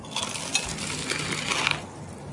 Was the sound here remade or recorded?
recorded